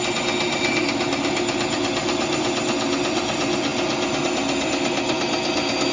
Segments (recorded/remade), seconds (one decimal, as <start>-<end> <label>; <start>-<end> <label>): 0.0-5.9 recorded